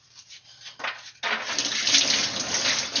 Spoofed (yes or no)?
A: no